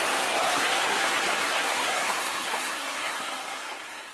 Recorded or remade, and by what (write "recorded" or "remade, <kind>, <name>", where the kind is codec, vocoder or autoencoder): remade, codec, SNAC